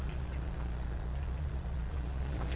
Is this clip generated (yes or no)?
yes